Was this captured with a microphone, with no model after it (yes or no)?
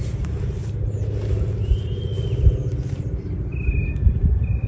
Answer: yes